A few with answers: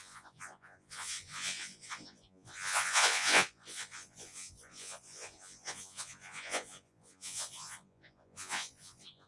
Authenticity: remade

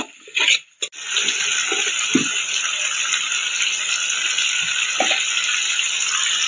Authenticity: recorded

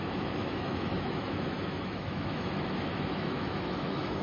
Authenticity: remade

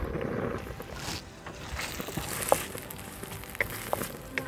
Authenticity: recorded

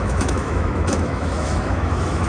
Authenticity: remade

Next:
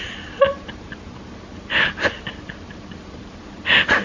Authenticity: recorded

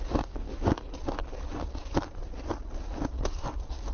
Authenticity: recorded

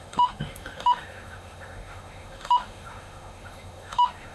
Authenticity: remade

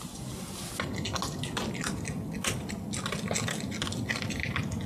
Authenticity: recorded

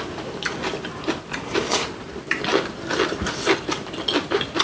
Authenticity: recorded